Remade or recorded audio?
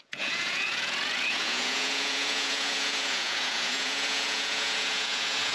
remade